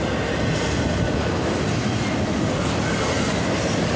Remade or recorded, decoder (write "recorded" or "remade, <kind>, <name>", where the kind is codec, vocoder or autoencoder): recorded